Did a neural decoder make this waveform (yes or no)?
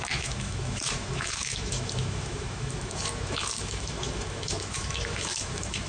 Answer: yes